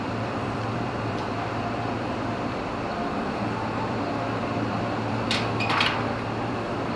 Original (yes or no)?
no